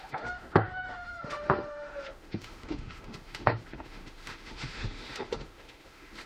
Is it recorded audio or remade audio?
remade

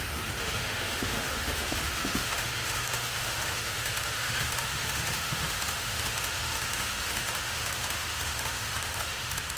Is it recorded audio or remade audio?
remade